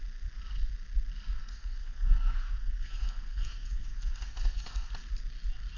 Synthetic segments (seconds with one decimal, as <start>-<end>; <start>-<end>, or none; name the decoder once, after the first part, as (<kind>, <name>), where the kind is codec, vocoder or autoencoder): 1.4-4.9 (codec, SNAC)